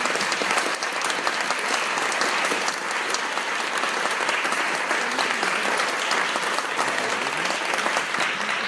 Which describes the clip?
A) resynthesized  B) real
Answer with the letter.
B